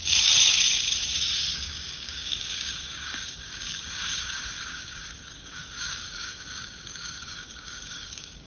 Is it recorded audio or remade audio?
remade